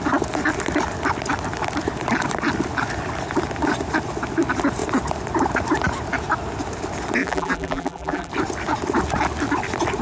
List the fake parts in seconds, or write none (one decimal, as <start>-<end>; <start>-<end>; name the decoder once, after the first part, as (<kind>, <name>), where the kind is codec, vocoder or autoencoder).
7.2-8.3 (vocoder, BigVGAN v2)